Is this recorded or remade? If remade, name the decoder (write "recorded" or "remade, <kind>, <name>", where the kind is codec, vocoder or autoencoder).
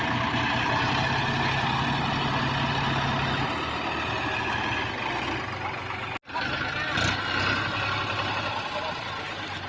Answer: recorded